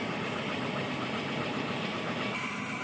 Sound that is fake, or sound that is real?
real